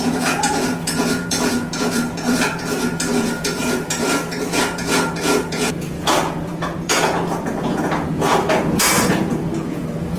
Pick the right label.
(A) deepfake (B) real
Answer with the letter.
A